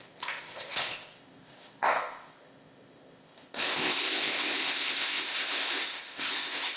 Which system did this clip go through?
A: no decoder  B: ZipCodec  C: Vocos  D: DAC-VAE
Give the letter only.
B